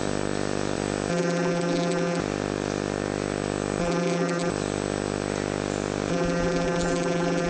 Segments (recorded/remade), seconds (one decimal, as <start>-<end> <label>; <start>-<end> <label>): 0.0-1.1 recorded; 1.1-2.2 remade; 2.2-3.8 recorded; 3.8-4.5 remade; 4.5-6.1 recorded; 6.1-7.5 remade